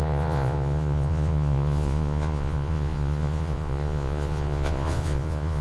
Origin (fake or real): fake